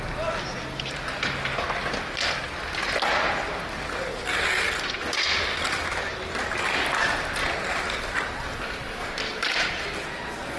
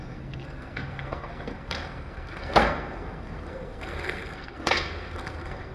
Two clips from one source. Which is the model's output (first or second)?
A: second